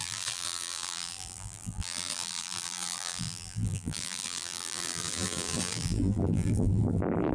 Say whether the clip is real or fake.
fake